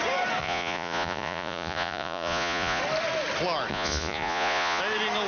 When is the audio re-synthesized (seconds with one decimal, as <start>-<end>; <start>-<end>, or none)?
0.4-2.8; 3.7-4.8